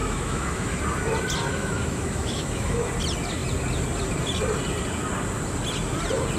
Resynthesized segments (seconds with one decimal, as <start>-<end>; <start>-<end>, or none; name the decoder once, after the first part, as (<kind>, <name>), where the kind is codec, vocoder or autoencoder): 0.0-0.8 (autoencoder, DAC-VAE); 1.5-2.9